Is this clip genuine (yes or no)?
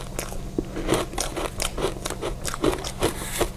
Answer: yes